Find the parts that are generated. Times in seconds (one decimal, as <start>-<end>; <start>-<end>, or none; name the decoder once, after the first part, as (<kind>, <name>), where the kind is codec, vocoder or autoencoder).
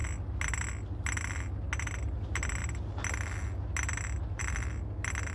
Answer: none